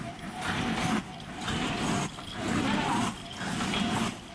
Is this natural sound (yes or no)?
yes